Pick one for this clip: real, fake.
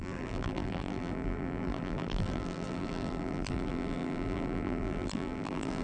fake